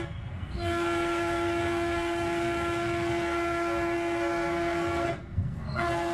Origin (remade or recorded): remade